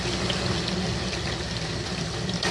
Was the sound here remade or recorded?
recorded